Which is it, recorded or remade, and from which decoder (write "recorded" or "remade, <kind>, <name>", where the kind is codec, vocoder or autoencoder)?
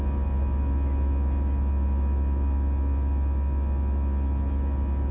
recorded